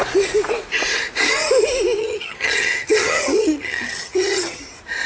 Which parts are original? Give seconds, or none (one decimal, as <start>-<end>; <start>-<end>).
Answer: 0.0-2.0; 4.6-5.1